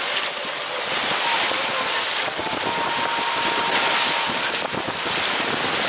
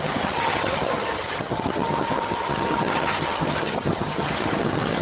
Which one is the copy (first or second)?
second